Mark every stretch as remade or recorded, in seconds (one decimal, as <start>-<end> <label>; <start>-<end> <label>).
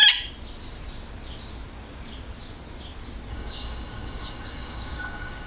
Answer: 0.0-3.3 recorded; 3.3-5.5 remade